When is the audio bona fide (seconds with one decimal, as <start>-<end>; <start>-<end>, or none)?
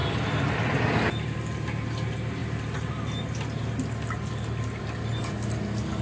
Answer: 0.0-6.0